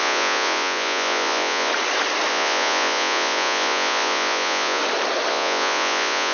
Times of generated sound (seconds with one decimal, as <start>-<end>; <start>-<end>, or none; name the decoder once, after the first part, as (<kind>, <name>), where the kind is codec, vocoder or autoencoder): 0.0-1.7 (vocoder, Vocos); 2.3-4.8; 5.3-6.3

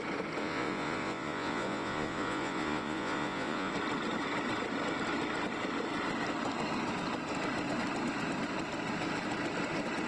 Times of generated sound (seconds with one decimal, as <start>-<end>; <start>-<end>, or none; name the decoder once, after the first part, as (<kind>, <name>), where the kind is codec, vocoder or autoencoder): 0.4-3.7 (vocoder, Vocos)

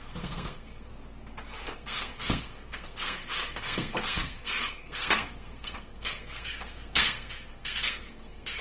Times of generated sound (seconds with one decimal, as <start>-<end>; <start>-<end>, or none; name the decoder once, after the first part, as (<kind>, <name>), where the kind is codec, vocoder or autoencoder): 0.0-0.9 (codec, SNAC); 1.6-8.6